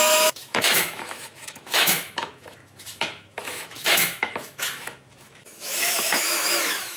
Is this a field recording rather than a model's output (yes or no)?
no